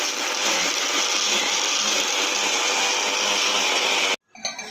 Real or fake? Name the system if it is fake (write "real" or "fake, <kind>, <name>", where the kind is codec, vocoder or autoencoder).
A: real